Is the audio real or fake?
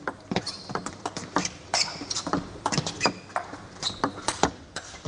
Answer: fake